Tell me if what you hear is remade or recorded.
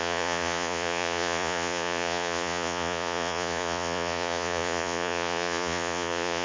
remade